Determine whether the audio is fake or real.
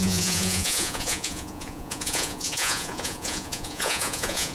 fake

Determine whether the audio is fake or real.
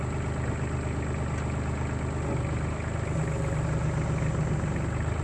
real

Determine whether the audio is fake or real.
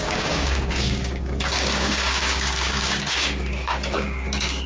fake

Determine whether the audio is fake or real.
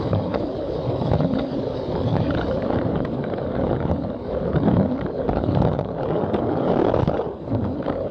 fake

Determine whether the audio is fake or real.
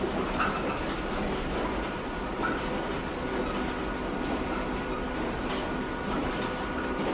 real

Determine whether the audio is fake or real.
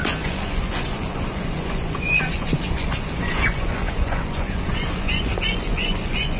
fake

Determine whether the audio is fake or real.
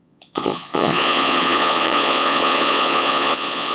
fake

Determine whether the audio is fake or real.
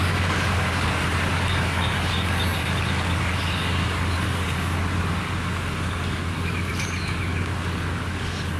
fake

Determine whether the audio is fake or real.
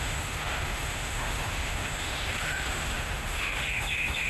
fake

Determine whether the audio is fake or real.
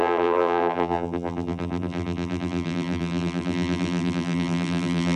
fake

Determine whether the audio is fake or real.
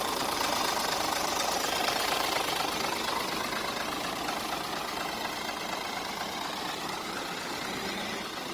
real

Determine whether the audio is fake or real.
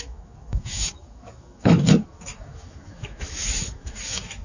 fake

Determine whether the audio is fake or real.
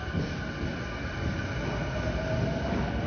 real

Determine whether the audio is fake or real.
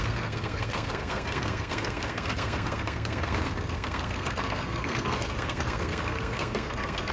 fake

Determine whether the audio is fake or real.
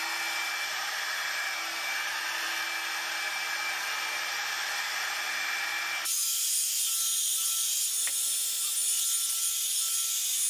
real